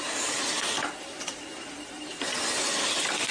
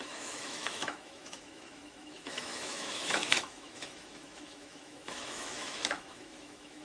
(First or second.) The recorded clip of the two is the first